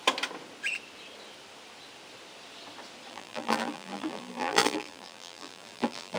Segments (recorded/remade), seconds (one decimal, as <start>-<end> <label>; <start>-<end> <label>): 0.0-3.1 recorded; 3.1-6.2 remade